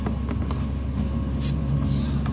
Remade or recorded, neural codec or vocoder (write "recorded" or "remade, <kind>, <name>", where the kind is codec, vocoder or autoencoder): recorded